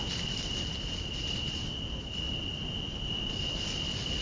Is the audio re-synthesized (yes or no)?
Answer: no